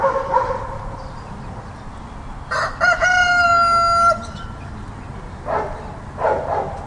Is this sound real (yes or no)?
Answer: yes